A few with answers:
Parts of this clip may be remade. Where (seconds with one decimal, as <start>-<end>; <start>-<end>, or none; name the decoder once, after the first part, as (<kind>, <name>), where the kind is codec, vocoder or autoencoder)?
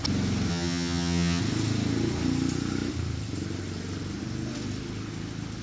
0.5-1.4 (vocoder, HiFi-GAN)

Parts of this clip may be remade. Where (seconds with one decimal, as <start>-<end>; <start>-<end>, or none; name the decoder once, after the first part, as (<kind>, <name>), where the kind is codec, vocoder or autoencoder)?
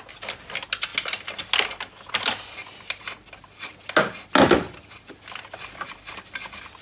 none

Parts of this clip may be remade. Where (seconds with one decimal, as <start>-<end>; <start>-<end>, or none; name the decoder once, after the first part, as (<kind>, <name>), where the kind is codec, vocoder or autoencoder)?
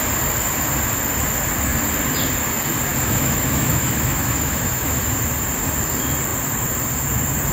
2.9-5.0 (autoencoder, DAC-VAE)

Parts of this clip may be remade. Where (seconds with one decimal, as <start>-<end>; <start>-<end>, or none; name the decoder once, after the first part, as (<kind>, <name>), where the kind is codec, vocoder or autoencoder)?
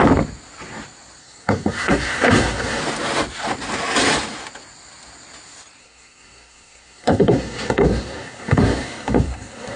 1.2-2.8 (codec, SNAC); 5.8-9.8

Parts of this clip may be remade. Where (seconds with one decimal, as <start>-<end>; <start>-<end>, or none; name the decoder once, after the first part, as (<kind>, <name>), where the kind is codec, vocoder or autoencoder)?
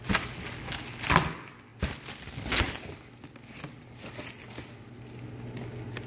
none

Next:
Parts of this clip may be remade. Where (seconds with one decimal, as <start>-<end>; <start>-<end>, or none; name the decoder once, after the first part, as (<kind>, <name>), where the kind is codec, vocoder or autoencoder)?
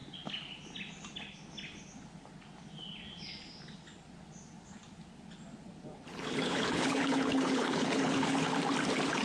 6.1-8.5 (codec, HILCodec)